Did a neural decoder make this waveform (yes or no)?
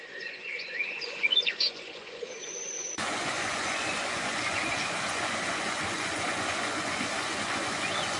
yes